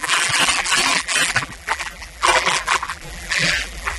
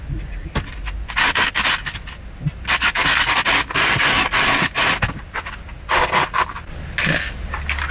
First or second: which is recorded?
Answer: second